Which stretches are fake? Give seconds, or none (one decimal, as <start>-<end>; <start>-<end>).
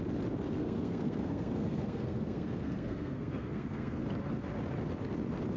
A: 0.6-4.0